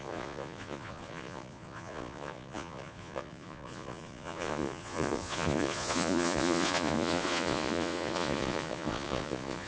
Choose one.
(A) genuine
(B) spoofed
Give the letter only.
B